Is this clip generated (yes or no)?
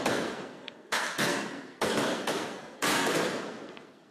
yes